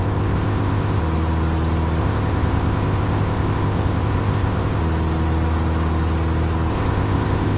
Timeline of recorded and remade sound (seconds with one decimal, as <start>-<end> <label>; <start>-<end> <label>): 0.0-1.0 remade; 1.0-2.0 recorded; 2.0-4.8 remade; 4.8-6.7 recorded; 6.7-7.6 remade